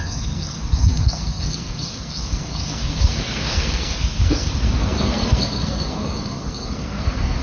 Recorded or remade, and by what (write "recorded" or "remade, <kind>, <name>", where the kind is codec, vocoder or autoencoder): remade, codec, SNAC